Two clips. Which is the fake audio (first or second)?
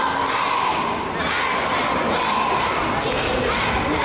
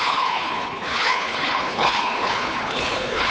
second